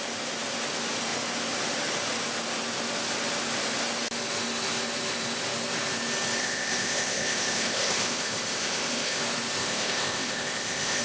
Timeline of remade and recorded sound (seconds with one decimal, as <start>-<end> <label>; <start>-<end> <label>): 0.0-6.4 recorded; 6.4-9.2 remade; 9.2-9.6 recorded; 9.6-11.0 remade